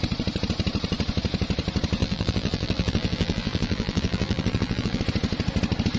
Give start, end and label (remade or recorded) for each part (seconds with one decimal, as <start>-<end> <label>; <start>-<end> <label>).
0.0-2.0 recorded; 2.0-5.0 remade; 5.0-6.0 recorded